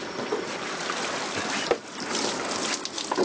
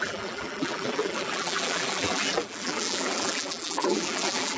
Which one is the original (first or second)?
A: first